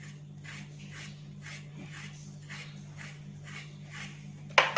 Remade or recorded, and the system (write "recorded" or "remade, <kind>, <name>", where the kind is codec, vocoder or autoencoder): recorded